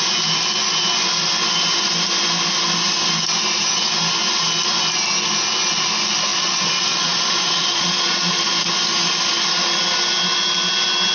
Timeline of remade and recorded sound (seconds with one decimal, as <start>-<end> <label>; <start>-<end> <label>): 0.0-6.3 recorded; 6.3-8.5 remade; 8.5-11.1 recorded